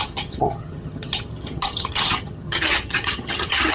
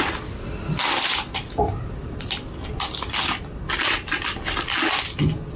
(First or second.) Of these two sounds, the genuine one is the second